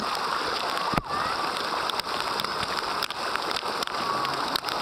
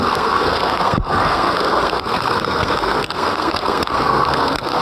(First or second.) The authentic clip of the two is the first